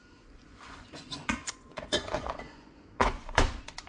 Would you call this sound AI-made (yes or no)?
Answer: yes